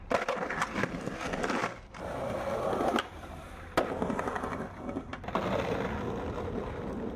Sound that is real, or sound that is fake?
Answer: real